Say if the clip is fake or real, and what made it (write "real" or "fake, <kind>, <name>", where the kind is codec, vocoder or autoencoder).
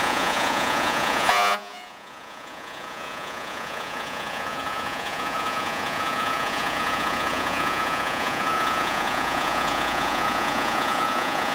fake, vocoder, Vocos